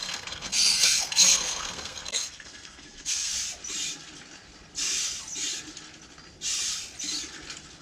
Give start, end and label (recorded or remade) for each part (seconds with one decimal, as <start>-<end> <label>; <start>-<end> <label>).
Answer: 0.0-3.3 remade; 3.3-7.8 recorded